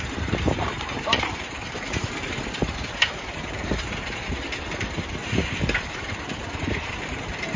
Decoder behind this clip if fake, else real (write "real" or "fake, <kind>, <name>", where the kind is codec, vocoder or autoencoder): fake, vocoder, BigVGAN v2